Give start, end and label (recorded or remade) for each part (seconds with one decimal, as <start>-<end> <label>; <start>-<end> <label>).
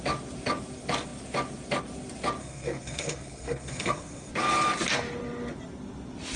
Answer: 0.0-2.4 recorded; 2.4-4.3 remade; 4.3-6.4 recorded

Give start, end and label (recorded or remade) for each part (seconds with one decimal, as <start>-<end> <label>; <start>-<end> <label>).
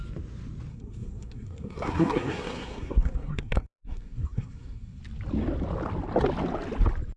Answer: 0.0-0.7 recorded; 0.7-5.0 remade; 5.0-7.2 recorded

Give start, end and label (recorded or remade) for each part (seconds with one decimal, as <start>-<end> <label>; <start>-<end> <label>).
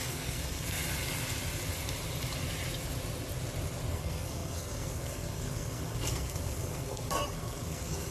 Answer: 0.0-0.8 remade; 0.8-3.9 recorded; 3.9-8.1 remade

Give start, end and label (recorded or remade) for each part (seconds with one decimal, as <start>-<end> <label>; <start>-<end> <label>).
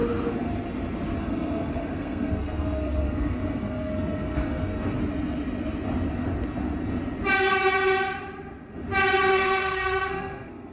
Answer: 0.0-1.2 recorded; 1.2-5.0 remade; 5.0-9.3 recorded; 9.3-10.7 remade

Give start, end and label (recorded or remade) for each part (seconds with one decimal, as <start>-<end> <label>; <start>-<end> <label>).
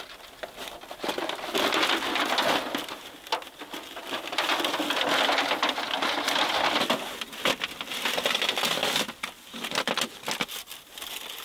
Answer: 0.0-11.4 recorded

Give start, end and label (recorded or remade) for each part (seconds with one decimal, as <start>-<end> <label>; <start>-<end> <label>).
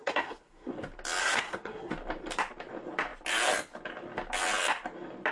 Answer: 0.0-0.7 remade; 0.7-1.2 recorded; 1.2-1.9 remade; 1.9-5.3 recorded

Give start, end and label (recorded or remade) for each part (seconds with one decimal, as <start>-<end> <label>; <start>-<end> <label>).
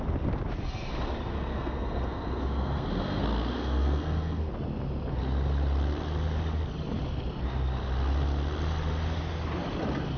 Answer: 0.0-1.3 recorded; 1.3-4.5 remade; 4.5-10.2 recorded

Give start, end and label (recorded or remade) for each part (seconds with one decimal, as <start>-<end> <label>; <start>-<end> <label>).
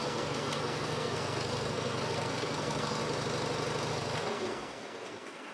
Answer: 0.0-3.0 remade; 3.0-3.9 recorded; 3.9-5.5 remade